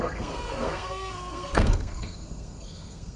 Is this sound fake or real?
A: fake